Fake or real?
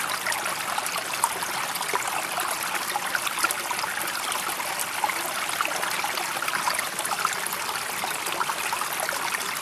real